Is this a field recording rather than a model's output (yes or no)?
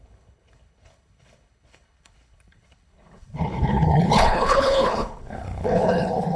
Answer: no